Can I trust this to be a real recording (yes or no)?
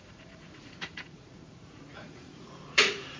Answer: no